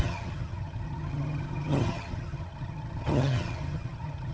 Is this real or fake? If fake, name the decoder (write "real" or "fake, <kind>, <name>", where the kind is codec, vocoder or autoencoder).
fake, vocoder, HiFi-GAN